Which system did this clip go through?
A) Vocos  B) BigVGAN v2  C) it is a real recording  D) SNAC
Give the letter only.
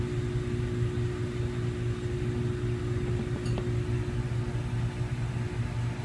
C